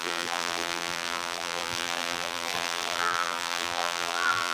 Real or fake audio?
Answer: fake